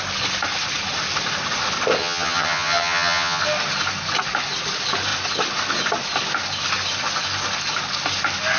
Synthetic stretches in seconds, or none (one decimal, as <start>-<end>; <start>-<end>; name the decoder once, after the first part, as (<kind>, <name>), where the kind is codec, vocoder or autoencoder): 2.0-3.4 (vocoder, HiFi-GAN)